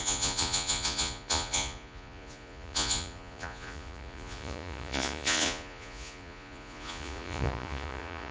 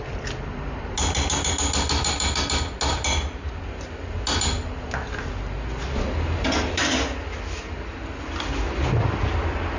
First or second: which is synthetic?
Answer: first